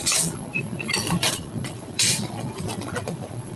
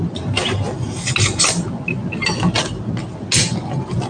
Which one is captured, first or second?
second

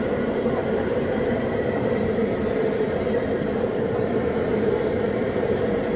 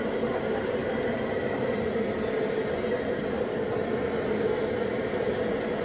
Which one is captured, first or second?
second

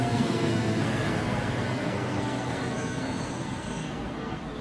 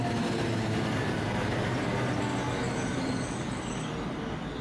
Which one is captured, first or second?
second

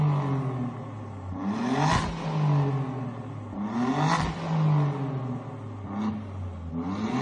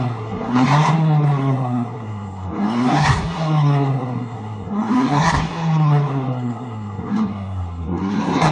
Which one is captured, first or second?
first